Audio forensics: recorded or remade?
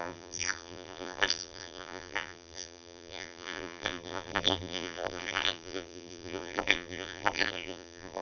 remade